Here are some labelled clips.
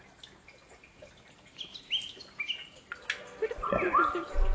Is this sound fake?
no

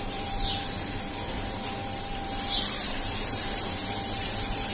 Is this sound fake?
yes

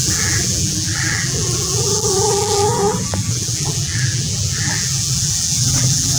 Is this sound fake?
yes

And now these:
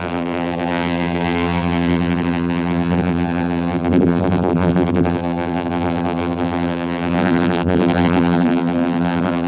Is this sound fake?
yes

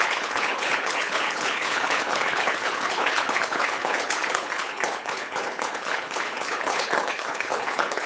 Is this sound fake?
yes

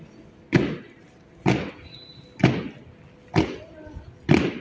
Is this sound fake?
no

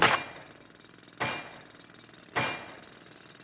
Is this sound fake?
no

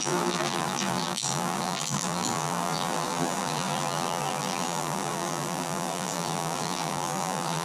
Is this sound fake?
yes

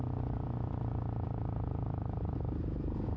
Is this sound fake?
no